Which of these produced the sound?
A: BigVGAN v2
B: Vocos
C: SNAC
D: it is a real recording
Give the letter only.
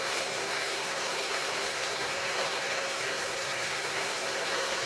C